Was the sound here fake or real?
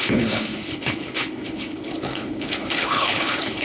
fake